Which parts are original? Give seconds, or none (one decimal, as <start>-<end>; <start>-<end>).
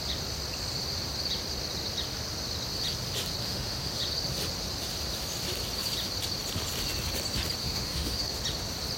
0.0-3.4; 4.0-7.6; 8.4-9.0